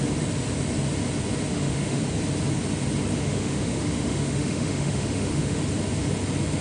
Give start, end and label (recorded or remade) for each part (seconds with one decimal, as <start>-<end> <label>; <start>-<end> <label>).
0.0-1.5 recorded; 1.5-2.0 remade; 2.0-3.1 recorded; 3.1-5.6 remade; 5.6-6.6 recorded

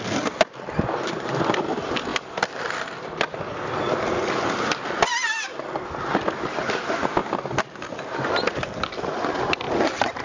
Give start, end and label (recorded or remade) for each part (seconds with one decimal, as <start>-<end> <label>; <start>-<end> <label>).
0.0-10.2 recorded

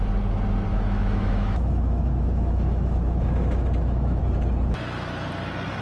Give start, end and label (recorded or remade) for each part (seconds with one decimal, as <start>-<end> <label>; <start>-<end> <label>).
0.0-0.7 recorded; 0.7-4.2 remade; 4.2-5.8 recorded

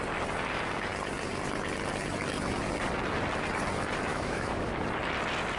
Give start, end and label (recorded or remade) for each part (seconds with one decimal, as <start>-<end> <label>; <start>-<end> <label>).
0.0-4.1 recorded; 4.1-4.7 remade; 4.7-5.6 recorded

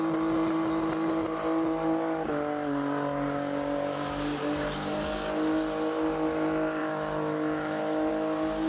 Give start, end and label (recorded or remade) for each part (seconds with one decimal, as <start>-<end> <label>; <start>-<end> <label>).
0.0-6.8 recorded; 6.8-8.1 remade; 8.1-8.7 recorded

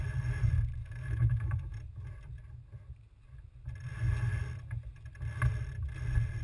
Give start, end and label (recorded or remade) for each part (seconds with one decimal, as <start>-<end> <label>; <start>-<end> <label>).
0.0-0.8 recorded; 0.8-1.7 remade; 1.7-6.4 recorded

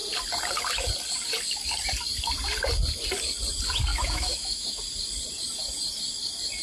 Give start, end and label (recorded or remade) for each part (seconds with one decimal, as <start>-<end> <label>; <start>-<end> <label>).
0.0-3.9 recorded; 3.9-4.8 remade; 4.8-6.6 recorded